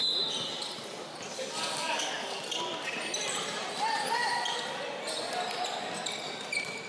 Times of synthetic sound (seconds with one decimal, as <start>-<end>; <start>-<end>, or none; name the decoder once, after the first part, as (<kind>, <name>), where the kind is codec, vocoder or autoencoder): 1.3-2.4 (codec, DAC)